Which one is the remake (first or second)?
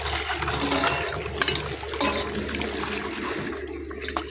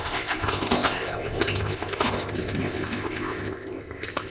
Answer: second